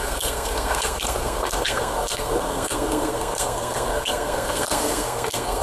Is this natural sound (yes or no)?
no